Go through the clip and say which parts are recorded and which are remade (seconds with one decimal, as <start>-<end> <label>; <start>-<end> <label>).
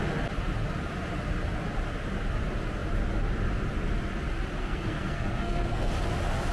0.0-4.6 recorded; 4.6-5.9 remade; 5.9-6.5 recorded